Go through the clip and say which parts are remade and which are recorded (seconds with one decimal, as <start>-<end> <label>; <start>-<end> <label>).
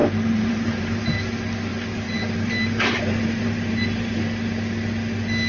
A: 0.0-1.0 remade; 1.0-1.7 recorded; 1.7-4.1 remade; 4.1-5.5 recorded